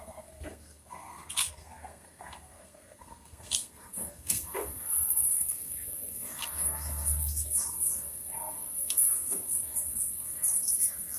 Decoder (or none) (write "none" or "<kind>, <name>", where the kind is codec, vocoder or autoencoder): codec, SNAC